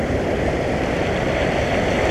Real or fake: real